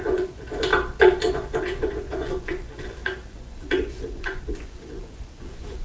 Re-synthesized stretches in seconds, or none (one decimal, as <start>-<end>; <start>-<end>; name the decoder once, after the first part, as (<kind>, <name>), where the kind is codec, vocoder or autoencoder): 0.0-0.7 (vocoder, Vocos); 1.6-5.8